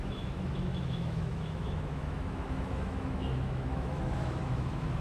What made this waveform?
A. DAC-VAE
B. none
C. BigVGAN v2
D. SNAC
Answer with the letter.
A